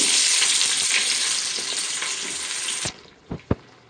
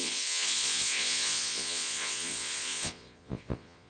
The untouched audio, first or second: first